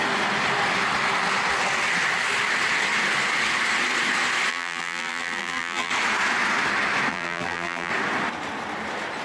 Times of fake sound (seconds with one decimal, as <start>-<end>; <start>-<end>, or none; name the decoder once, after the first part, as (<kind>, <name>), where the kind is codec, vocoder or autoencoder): 4.5-5.9 (vocoder, BigVGAN v2); 7.1-7.9